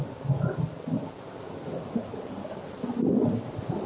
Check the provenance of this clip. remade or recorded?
recorded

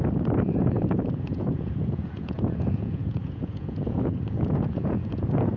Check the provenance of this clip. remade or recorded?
remade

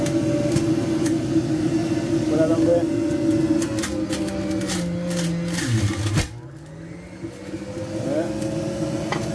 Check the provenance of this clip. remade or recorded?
recorded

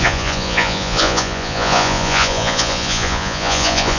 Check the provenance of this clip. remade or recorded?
remade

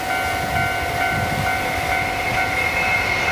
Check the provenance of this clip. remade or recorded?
recorded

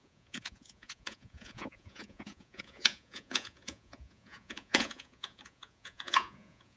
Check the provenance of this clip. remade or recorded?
remade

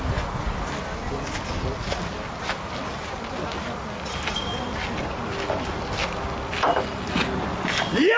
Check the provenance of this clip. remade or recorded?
recorded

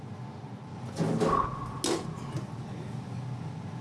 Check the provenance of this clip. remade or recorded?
recorded